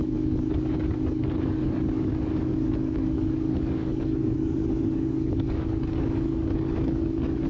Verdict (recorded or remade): remade